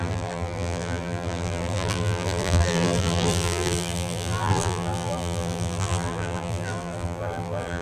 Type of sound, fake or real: fake